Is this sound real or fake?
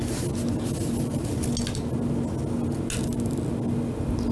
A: real